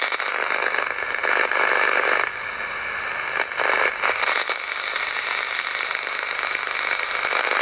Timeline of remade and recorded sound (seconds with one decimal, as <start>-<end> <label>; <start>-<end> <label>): 0.0-7.6 recorded